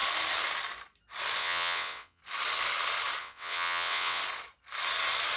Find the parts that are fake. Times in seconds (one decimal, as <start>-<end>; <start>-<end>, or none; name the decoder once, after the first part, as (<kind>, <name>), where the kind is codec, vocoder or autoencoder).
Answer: 1.4-2.2 (vocoder, WaveNeXt); 3.2-4.2